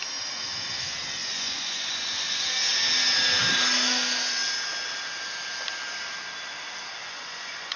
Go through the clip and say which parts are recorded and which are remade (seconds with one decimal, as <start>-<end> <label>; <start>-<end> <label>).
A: 0.0-1.2 recorded; 1.2-2.4 remade; 2.4-7.0 recorded; 7.0-7.8 remade